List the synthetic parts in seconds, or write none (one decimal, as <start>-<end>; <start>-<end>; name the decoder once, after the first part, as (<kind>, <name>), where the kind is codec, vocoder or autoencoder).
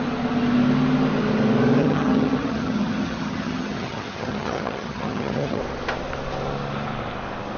1.8-5.6 (vocoder, HiFi-GAN)